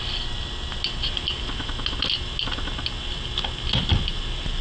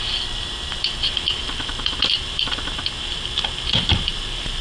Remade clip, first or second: second